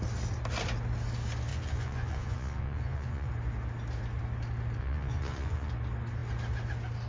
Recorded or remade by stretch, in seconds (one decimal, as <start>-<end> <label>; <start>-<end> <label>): 0.0-1.5 recorded; 1.5-3.3 remade; 3.3-4.8 recorded; 4.8-5.7 remade; 5.7-7.1 recorded